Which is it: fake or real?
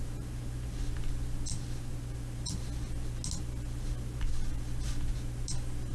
real